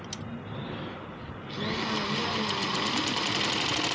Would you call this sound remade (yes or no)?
no